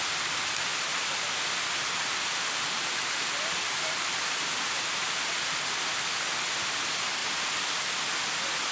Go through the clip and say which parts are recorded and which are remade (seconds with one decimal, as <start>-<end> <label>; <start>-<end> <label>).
0.0-8.7 recorded